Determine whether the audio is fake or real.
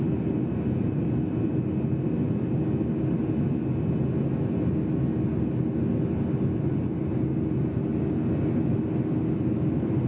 real